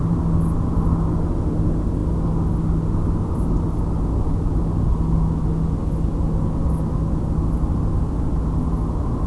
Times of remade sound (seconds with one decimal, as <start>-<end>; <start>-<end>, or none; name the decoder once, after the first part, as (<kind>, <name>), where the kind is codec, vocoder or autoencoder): none